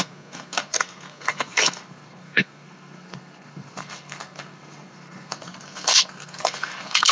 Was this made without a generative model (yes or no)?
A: no